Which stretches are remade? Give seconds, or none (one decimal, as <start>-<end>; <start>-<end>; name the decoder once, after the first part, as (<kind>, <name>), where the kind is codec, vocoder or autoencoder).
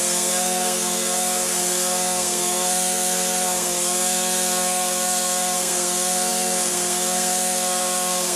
0.0-8.4 (codec, SNAC)